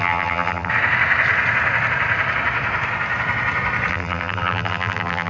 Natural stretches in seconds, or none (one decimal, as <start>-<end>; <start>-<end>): 0.7-3.9